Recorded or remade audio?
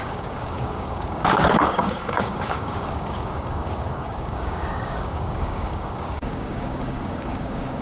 remade